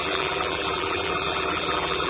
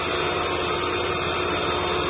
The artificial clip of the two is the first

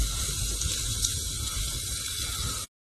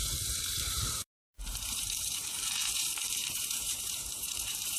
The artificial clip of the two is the second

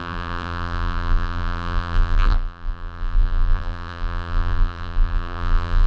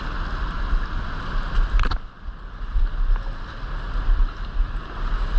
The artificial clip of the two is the first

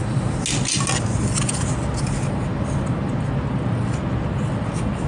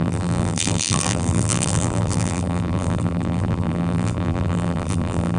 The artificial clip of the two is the second